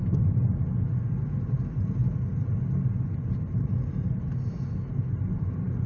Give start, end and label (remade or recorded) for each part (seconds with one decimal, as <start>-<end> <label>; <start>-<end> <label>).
0.0-5.9 recorded